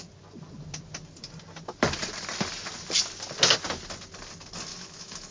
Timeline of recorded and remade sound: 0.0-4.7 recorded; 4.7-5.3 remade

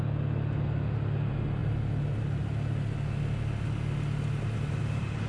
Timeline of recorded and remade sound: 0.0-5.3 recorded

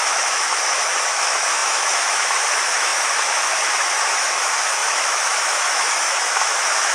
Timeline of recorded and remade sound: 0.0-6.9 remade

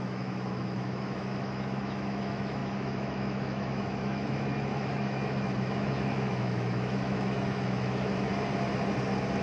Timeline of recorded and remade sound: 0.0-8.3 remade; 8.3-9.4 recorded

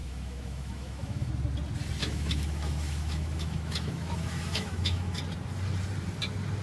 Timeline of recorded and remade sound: 0.0-1.3 remade; 1.3-2.0 recorded; 2.0-5.2 remade; 5.2-6.6 recorded